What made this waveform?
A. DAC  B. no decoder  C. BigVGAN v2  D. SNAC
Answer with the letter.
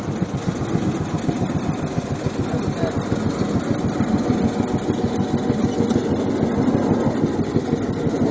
B